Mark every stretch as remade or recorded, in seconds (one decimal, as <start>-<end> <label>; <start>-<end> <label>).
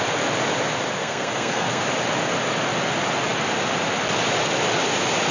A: 0.0-1.0 recorded; 1.0-1.8 remade; 1.8-5.3 recorded